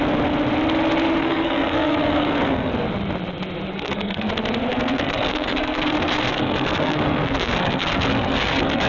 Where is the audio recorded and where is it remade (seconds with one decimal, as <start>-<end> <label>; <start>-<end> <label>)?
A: 0.0-1.2 recorded; 1.2-2.7 remade; 2.7-3.7 recorded; 3.7-4.3 remade; 4.3-4.7 recorded; 4.7-8.9 remade